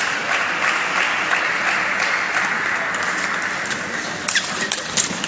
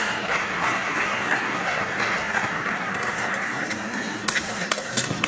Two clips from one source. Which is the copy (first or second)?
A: second